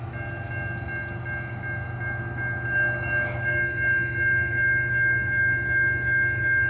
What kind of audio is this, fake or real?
real